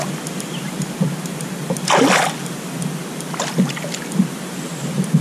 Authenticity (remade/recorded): recorded